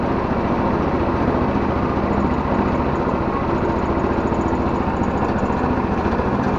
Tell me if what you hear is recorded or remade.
recorded